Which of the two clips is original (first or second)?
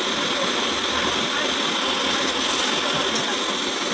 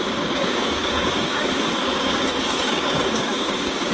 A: first